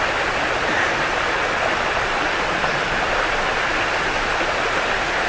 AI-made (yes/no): no